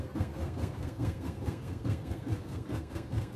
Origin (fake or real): fake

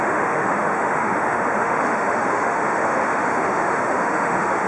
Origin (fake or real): fake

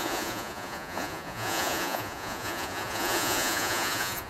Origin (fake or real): fake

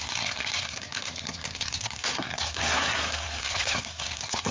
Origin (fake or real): fake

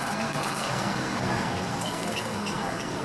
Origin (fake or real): fake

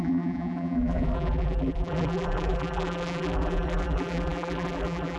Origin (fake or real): fake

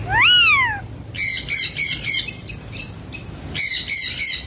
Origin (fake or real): real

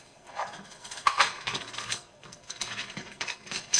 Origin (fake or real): fake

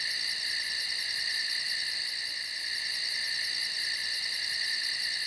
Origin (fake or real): real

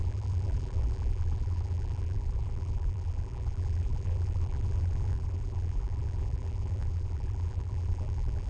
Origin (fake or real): fake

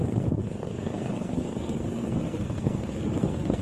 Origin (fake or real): fake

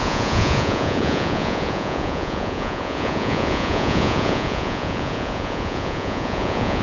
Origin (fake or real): fake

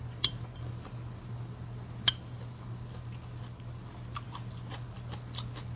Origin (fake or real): real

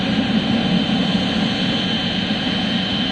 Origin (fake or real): real